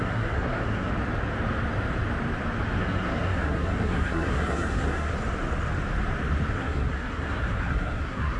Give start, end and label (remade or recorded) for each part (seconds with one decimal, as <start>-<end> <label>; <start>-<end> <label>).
0.0-0.9 remade; 0.9-2.8 recorded; 2.8-5.1 remade; 5.1-6.5 recorded; 6.5-8.4 remade